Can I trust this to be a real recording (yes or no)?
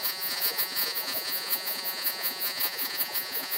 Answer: no